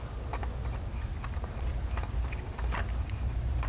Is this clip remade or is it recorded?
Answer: recorded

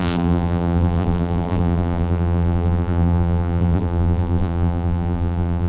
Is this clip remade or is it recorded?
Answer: remade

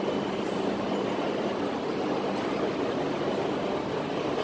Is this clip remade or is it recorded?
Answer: recorded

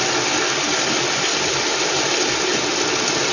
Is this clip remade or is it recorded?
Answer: recorded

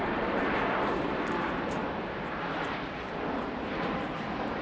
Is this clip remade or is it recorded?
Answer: remade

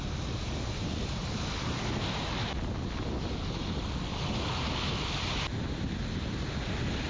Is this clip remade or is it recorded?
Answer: recorded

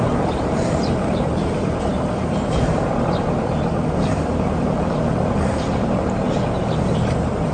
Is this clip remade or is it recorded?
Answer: remade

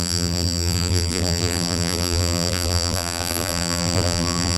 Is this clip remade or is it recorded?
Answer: remade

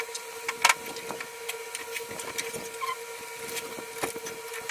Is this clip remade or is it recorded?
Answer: recorded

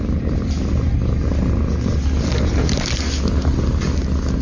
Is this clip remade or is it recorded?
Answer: recorded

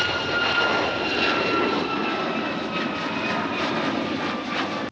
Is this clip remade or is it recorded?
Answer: remade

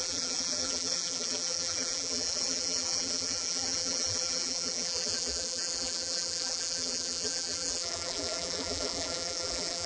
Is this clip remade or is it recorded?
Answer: remade